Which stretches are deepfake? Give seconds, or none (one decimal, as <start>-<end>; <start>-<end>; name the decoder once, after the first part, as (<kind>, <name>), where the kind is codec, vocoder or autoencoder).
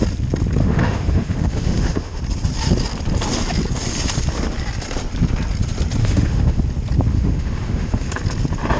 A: 0.6-2.2 (autoencoder, DAC-VAE); 6.0-6.6; 7.1-8.1